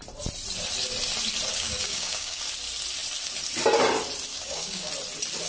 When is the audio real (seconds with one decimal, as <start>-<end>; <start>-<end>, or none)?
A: 0.0-1.5; 2.4-4.3; 4.9-5.5

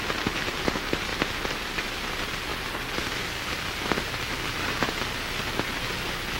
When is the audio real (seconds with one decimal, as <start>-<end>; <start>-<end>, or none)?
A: 0.0-6.4

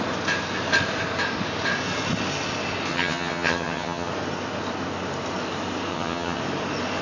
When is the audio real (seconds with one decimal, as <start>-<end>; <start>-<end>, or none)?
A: 0.0-2.9; 4.1-5.9; 6.4-7.0

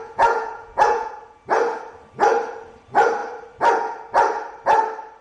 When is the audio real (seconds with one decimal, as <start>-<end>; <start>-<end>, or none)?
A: 1.1-5.2